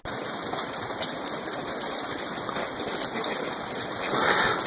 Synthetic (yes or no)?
no